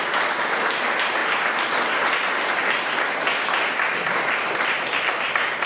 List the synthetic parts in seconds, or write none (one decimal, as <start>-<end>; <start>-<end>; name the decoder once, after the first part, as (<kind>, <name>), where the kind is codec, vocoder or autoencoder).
none